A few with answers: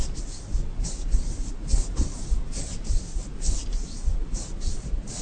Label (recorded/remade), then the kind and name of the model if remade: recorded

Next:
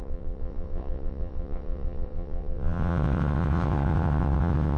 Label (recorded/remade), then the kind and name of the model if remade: remade, vocoder, WaveNeXt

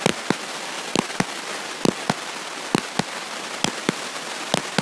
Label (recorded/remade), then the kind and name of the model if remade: recorded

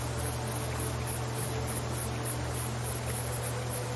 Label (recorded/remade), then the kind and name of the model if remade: recorded